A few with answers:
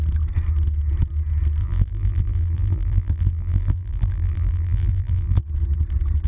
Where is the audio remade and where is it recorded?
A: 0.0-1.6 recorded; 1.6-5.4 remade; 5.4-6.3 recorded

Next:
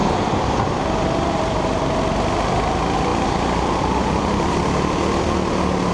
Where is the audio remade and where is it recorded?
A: 0.0-2.0 remade; 2.0-3.1 recorded; 3.1-5.2 remade; 5.2-5.9 recorded

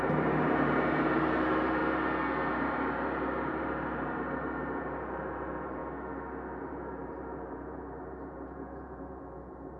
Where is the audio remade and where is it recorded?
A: 0.0-1.8 remade; 1.8-2.5 recorded; 2.5-5.8 remade; 5.8-6.6 recorded; 6.6-9.8 remade

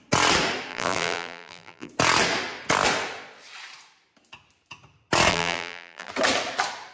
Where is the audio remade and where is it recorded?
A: 0.0-0.7 recorded; 0.7-1.9 remade; 1.9-5.3 recorded; 5.3-6.1 remade; 6.1-6.9 recorded

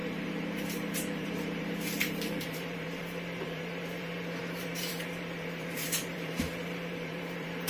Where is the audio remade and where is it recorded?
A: 0.0-7.7 remade

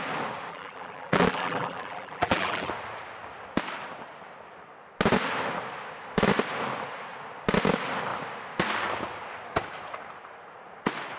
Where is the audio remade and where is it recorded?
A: 0.0-0.5 recorded; 0.5-2.7 remade; 2.7-11.2 recorded

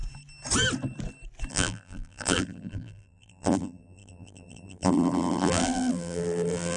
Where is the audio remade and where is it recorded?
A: 0.0-1.5 recorded; 1.5-6.8 remade

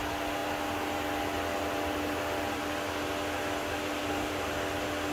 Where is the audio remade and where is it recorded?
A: 0.0-4.0 recorded; 4.0-4.5 remade; 4.5-5.1 recorded